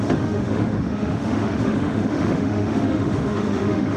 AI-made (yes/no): yes